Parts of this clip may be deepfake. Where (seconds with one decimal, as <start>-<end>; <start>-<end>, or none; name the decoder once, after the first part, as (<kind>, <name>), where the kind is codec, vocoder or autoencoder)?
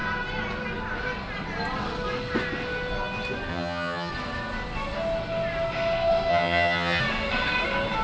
3.5-4.1 (vocoder, HiFi-GAN); 6.3-7.0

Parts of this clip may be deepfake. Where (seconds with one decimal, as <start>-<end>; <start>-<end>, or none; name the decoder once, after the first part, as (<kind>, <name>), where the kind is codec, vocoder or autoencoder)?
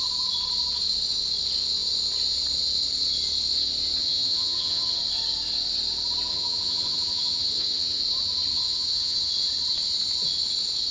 4.0-5.0 (vocoder, HiFi-GAN); 6.3-8.0; 8.5-9.3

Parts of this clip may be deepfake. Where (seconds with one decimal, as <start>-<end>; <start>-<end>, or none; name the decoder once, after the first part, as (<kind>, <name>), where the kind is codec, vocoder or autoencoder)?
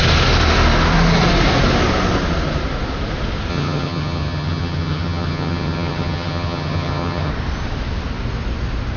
3.5-7.3 (vocoder, HiFi-GAN)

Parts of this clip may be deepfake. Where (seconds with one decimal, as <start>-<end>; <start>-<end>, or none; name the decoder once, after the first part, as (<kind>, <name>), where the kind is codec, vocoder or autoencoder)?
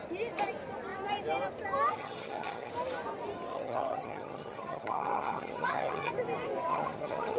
2.0-2.7 (vocoder, HiFi-GAN); 3.5-6.1; 6.7-7.4